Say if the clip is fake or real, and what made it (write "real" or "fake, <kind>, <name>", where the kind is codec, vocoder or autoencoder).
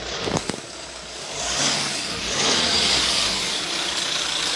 fake, codec, DAC